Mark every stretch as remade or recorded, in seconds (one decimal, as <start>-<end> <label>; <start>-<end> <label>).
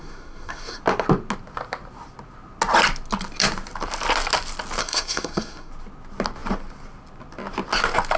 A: 0.0-0.8 remade; 0.8-4.8 recorded; 4.8-5.7 remade; 5.7-8.2 recorded